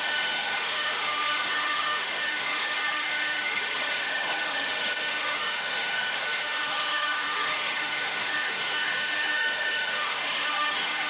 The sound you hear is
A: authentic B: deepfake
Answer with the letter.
B